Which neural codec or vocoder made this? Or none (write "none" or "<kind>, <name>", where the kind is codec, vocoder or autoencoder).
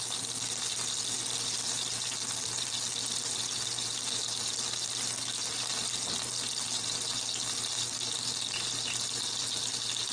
none